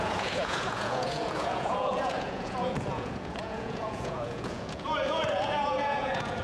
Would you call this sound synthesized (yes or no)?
yes